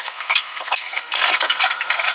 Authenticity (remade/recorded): remade